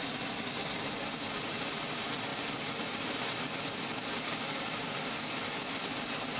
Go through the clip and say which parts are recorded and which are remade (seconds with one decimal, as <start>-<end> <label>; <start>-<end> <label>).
0.0-6.4 recorded